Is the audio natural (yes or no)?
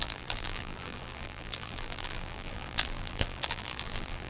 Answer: no